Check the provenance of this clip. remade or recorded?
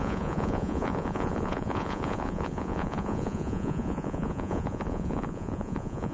remade